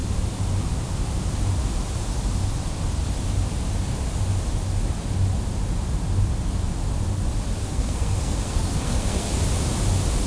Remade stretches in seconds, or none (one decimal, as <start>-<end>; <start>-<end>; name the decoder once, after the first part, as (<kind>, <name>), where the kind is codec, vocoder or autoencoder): 7.6-9.3 (codec, SNAC)